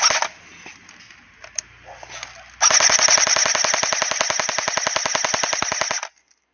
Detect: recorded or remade recorded